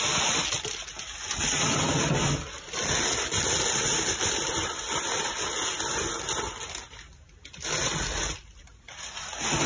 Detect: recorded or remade recorded